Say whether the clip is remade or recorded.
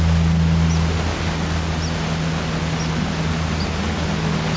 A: recorded